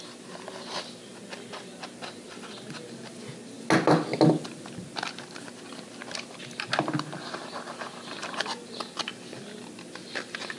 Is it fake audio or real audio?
real